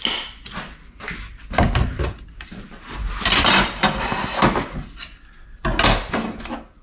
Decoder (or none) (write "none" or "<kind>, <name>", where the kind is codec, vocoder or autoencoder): none